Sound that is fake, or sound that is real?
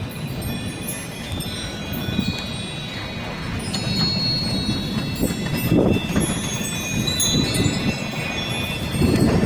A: real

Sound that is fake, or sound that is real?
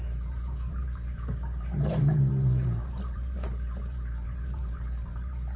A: fake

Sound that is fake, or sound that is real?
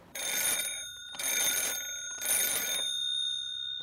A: fake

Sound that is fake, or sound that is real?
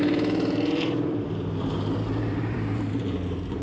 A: fake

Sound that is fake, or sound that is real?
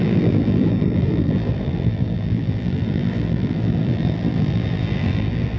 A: fake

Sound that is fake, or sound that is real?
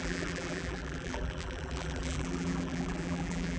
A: fake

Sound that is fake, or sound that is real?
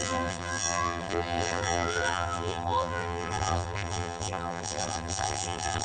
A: fake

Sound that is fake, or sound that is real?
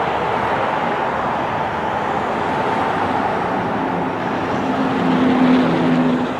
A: real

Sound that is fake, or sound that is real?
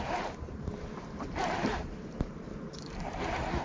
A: fake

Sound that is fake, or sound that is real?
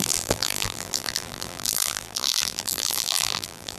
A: fake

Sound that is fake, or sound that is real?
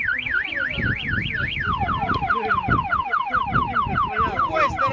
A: real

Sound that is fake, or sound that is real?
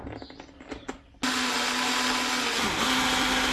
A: real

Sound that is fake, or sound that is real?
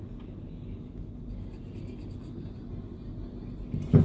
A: real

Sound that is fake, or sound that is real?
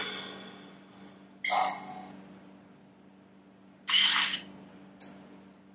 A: real